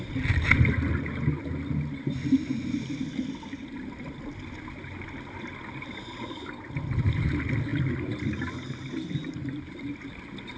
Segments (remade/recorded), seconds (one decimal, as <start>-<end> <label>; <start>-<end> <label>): 0.0-10.6 recorded